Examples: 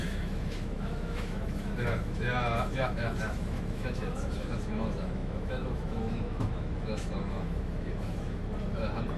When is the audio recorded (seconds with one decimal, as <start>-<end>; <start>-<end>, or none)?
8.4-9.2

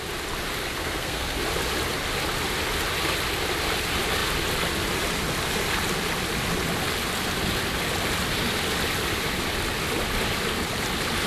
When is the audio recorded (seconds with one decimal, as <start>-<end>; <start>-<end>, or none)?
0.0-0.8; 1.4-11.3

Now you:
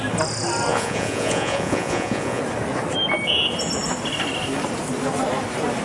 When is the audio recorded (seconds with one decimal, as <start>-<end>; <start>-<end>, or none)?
0.0-0.7; 2.4-5.8

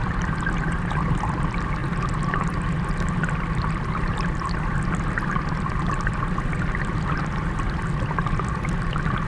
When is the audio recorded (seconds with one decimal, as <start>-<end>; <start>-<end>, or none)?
0.0-9.3

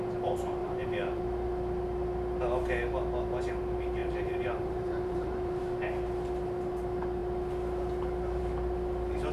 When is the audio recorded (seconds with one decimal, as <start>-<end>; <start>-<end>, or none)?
0.0-0.6; 1.2-4.0; 5.6-9.3

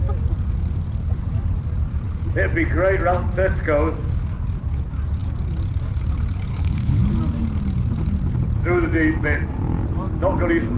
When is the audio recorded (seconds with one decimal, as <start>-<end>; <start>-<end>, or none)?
0.0-6.5; 7.0-10.8

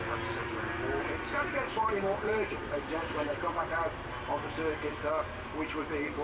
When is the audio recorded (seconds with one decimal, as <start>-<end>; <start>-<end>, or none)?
0.0-0.4; 4.1-6.2